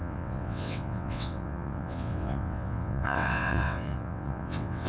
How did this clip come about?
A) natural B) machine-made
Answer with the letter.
B